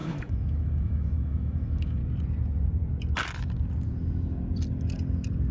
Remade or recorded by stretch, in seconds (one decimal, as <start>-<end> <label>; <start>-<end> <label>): 0.0-2.0 remade; 2.0-5.5 recorded